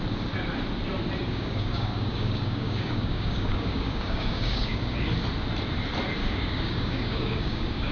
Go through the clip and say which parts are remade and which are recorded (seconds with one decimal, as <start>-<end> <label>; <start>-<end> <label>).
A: 0.0-1.2 recorded; 1.2-4.8 remade; 4.8-6.2 recorded; 6.2-7.9 remade